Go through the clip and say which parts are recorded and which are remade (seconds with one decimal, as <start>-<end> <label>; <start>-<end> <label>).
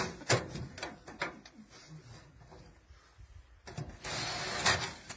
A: 0.0-5.2 recorded